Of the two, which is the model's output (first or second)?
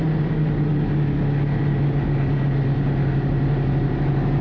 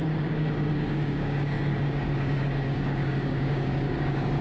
second